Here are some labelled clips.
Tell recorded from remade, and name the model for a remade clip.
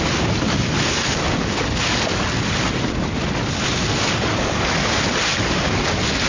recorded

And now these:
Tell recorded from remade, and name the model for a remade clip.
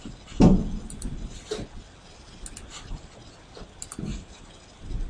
recorded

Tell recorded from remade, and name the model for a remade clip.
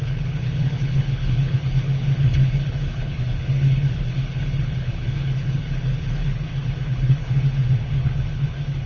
remade, codec, HILCodec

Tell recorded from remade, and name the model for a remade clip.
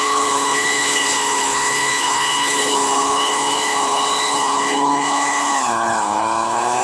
remade, codec, HILCodec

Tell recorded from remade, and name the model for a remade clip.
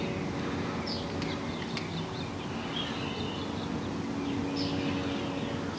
recorded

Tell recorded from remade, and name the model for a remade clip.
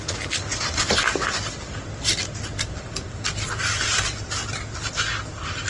recorded